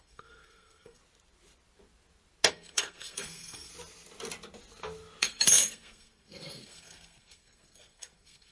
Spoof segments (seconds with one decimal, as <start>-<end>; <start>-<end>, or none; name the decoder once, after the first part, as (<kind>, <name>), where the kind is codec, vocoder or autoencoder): 0.0-1.0 (codec, SNAC); 2.5-3.7; 5.2-8.5